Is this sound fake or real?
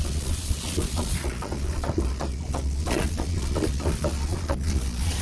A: fake